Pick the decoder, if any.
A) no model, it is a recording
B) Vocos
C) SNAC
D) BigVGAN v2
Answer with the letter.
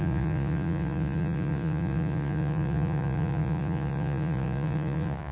B